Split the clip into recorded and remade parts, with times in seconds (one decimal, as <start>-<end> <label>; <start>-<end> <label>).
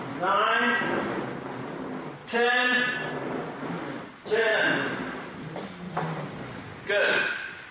0.0-2.2 recorded; 2.2-3.1 remade; 3.1-7.7 recorded